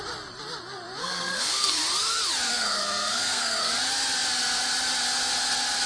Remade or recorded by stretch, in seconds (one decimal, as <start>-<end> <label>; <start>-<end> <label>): 0.0-1.0 recorded; 1.0-1.8 remade; 1.8-2.5 recorded; 2.5-3.7 remade; 3.7-5.9 recorded

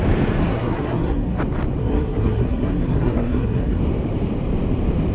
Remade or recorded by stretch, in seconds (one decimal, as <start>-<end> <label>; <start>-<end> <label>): 0.0-0.4 recorded; 0.4-1.4 remade; 1.4-1.8 recorded; 1.8-3.8 remade; 3.8-5.1 recorded

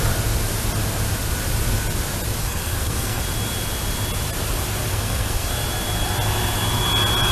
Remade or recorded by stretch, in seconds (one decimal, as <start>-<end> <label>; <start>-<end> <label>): 0.0-2.4 recorded; 2.4-3.2 remade; 3.2-4.9 recorded; 4.9-5.5 remade; 5.5-7.3 recorded

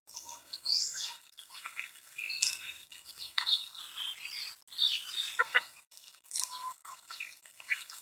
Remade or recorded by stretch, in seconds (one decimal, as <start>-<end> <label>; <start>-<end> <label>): 0.0-3.8 remade; 3.8-5.4 recorded; 5.4-8.0 remade

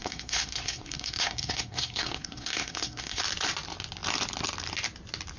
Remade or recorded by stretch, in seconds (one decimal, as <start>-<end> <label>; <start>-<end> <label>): 0.0-3.2 remade; 3.2-5.4 recorded

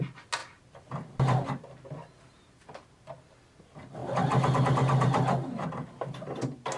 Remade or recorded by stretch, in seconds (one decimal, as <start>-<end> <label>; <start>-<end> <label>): 0.0-6.8 recorded

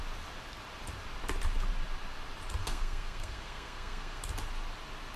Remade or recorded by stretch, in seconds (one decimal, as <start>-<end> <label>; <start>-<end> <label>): 0.0-2.6 recorded; 2.6-4.2 remade; 4.2-5.2 recorded